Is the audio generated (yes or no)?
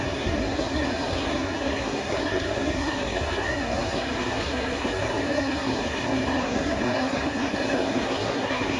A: yes